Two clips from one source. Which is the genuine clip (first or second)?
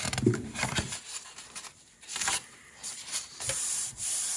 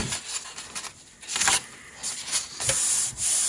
second